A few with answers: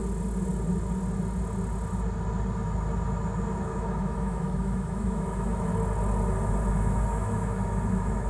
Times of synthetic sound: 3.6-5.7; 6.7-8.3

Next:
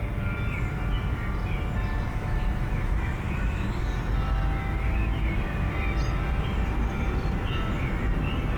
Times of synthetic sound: 2.1-3.7

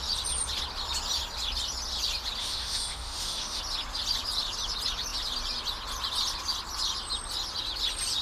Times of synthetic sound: 2.4-3.6

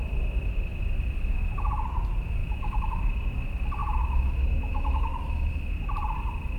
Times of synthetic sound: 2.4-3.1; 3.8-5.5

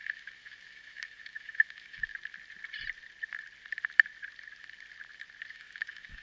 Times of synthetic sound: 0.0-2.1; 5.5-6.2